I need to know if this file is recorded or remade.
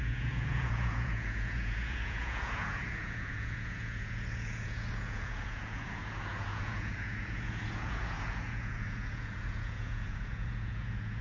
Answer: remade